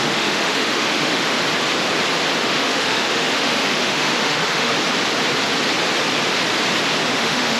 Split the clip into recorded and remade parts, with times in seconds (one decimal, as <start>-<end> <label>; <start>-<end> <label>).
0.0-1.4 remade; 1.4-2.4 recorded; 2.4-4.7 remade; 4.7-7.1 recorded; 7.1-7.6 remade